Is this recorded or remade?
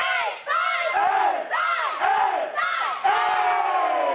recorded